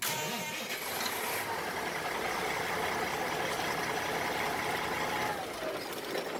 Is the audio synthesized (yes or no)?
no